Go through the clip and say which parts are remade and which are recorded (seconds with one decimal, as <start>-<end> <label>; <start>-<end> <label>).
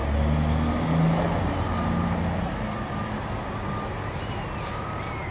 0.0-5.3 recorded